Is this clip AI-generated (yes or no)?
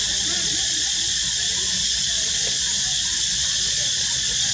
yes